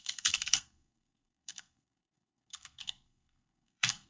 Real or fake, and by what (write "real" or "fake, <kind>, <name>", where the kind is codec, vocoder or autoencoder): fake, codec, SNAC